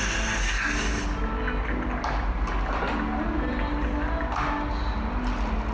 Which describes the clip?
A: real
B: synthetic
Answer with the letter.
A